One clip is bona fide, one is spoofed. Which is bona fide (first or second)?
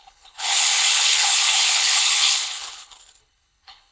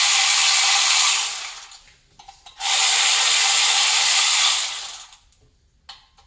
second